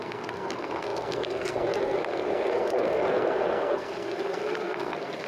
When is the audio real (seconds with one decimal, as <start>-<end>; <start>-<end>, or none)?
none